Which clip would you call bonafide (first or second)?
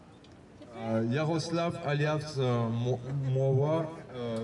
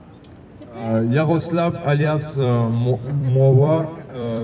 first